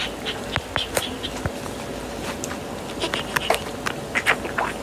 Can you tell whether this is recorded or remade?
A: recorded